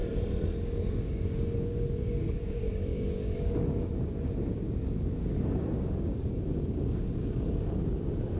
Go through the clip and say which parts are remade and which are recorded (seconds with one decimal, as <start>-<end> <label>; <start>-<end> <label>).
0.0-0.6 recorded; 0.6-8.4 remade